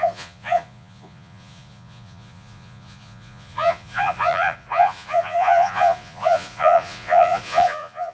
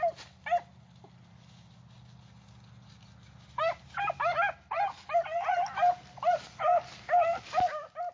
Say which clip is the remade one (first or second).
first